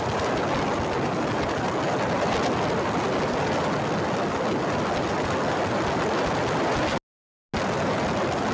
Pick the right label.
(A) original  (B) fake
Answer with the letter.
A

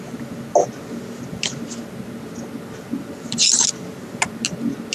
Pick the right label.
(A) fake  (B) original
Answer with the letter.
B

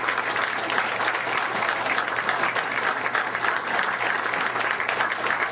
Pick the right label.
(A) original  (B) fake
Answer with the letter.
A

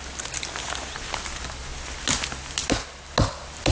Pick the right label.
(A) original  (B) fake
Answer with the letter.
A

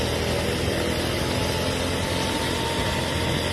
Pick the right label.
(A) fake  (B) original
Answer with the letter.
B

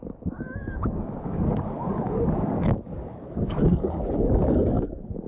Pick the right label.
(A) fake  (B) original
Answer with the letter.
A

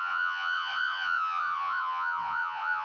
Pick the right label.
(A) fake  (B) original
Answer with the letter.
A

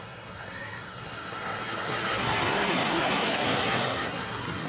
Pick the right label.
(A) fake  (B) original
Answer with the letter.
A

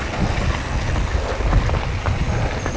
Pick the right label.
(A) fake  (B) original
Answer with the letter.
B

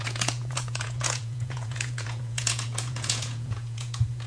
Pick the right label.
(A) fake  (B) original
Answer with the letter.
A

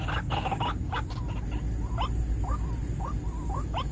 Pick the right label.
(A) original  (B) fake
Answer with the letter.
A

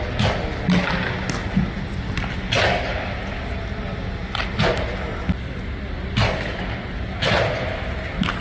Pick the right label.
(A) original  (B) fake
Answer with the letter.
A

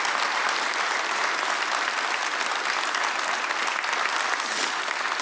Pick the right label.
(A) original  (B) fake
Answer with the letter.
A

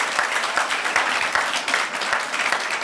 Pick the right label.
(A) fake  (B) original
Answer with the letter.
B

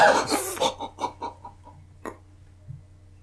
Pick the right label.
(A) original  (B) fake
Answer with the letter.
A